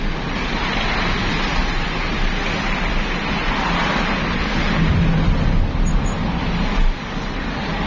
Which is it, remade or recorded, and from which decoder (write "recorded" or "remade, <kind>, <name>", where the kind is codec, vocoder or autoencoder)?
recorded